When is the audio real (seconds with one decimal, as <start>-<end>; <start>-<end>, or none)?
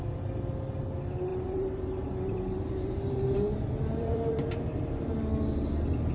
0.0-1.3; 5.0-6.1